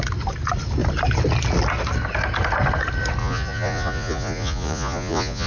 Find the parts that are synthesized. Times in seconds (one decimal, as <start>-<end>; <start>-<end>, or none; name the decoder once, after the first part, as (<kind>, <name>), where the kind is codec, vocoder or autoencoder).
3.2-5.5 (vocoder, Vocos)

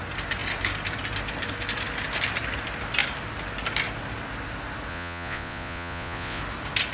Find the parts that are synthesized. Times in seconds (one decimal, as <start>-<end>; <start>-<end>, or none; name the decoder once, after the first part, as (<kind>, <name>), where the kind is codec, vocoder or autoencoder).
4.9-6.4 (vocoder, Vocos)